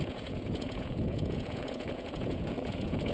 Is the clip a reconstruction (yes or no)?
yes